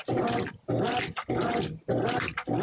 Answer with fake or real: real